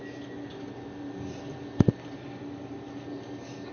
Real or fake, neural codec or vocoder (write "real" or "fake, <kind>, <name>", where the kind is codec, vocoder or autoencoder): real